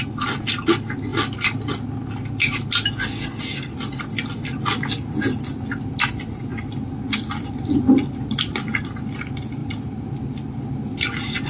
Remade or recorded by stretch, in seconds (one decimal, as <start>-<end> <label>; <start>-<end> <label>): 0.0-11.5 recorded